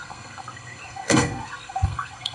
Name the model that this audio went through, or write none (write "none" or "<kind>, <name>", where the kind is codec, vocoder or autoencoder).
codec, SNAC